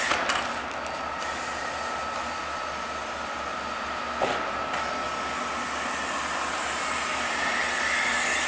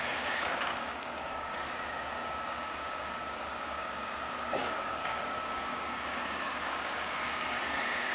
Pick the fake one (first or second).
second